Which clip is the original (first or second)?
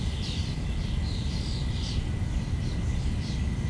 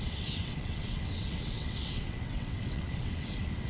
first